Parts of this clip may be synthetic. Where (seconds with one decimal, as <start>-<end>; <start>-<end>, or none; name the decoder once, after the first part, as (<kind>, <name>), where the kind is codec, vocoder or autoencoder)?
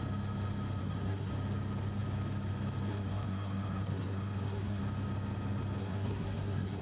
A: 0.8-1.3 (codec, SNAC); 2.9-4.8; 5.8-6.8